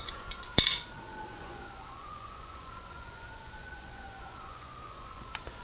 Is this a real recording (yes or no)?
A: no